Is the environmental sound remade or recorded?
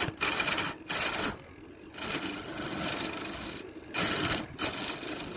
recorded